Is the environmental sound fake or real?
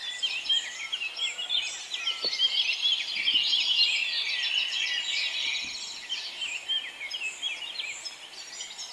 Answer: real